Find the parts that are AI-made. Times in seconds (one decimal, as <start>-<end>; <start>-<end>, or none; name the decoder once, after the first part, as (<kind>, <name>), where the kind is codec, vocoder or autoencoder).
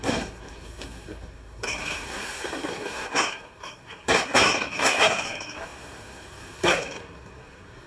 0.0-7.9 (codec, SNAC)